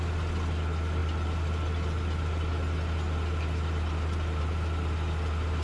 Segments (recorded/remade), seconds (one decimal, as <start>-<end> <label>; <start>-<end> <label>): 0.0-5.6 recorded